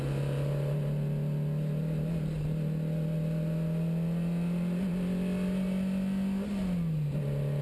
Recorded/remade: recorded